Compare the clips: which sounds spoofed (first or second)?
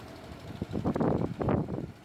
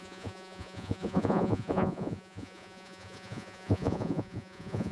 second